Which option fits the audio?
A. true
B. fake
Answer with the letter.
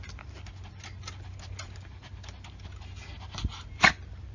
A